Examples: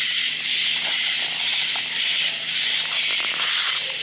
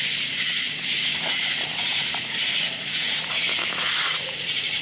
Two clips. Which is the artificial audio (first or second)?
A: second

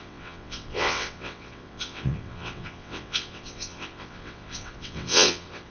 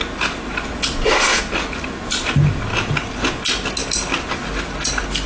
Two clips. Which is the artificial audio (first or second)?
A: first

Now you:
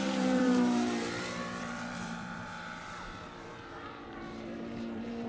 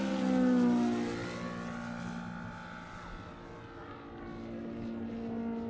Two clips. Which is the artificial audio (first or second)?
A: first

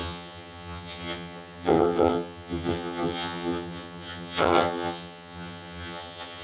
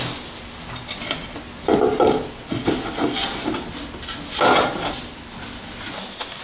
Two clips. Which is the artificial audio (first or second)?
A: first